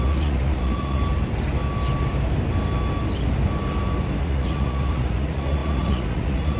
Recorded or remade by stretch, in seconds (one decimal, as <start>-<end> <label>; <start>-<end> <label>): 0.0-1.0 remade; 1.0-4.2 recorded; 4.2-6.6 remade